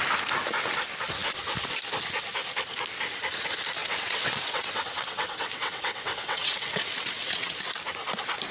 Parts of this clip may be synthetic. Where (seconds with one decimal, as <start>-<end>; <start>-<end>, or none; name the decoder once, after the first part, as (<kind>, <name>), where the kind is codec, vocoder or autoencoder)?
3.8-7.6 (vocoder, WaveNeXt)